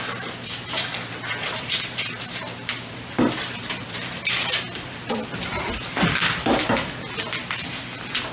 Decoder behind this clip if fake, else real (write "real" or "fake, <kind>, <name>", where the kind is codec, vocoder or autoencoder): fake, vocoder, BigVGAN v2